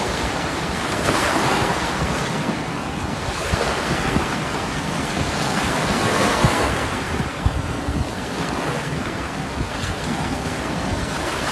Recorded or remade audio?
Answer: remade